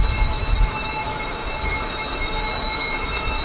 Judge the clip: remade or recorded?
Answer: remade